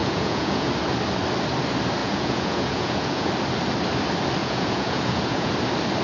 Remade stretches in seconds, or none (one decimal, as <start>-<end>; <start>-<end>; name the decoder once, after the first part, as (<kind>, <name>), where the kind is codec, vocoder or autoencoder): 0.0-0.7 (vocoder, Vocos); 2.0-3.3; 4.4-5.5